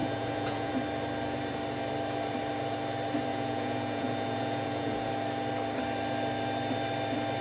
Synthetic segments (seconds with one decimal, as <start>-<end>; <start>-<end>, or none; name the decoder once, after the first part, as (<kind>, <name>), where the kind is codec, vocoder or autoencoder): 0.0-0.7 (vocoder, Vocos); 3.3-5.1